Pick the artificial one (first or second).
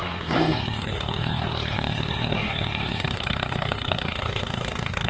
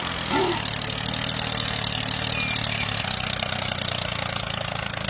first